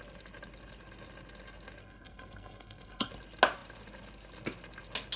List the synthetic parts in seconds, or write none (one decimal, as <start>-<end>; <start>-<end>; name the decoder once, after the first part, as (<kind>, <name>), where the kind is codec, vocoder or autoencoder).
1.8-3.1 (codec, SNAC)